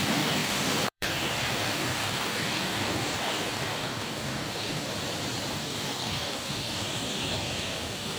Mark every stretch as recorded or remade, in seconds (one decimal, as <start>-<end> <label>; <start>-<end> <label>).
0.0-4.9 remade; 4.9-5.5 recorded; 5.5-8.2 remade